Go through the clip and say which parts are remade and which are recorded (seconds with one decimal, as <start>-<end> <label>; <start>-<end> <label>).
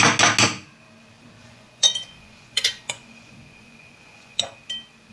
0.0-1.4 recorded; 1.4-4.5 remade; 4.5-5.1 recorded